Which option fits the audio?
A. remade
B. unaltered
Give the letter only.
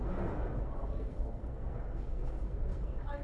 A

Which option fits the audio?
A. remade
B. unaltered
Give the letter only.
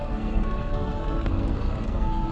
A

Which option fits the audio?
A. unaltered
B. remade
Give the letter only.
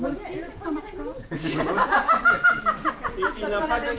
B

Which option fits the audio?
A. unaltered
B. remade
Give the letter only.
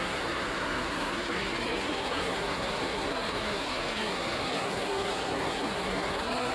B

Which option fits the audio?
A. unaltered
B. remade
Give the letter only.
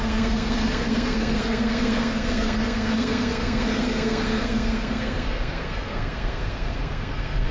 B